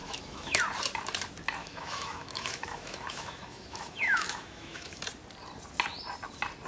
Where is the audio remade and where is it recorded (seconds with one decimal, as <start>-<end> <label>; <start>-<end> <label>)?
0.0-0.6 remade; 0.6-1.6 recorded; 1.6-5.0 remade; 5.0-6.7 recorded